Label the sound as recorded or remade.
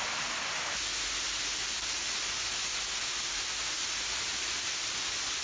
recorded